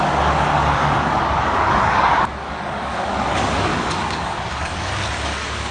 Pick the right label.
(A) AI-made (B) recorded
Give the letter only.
A